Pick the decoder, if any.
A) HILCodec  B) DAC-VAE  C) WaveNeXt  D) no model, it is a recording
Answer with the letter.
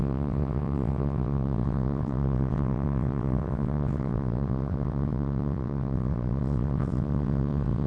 C